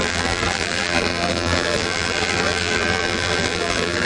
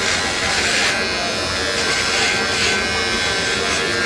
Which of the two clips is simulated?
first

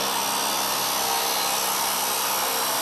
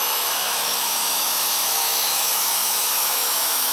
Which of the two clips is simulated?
second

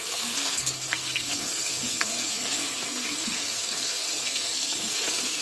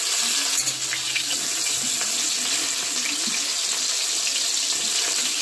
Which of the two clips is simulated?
first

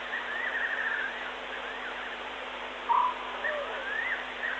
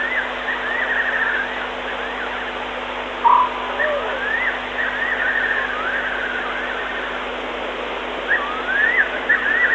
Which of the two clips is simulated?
first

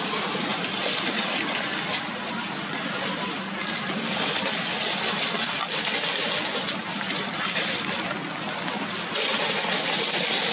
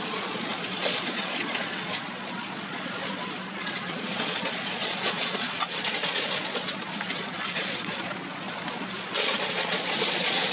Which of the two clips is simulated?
second